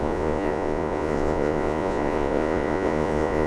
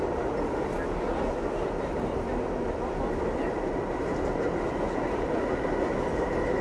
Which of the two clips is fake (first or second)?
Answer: first